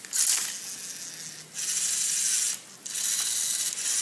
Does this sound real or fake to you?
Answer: real